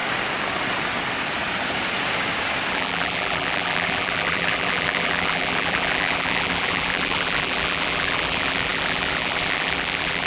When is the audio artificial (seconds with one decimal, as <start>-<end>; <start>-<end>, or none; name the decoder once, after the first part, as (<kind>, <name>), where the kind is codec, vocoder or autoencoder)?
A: 2.7-10.3 (vocoder, BigVGAN v2)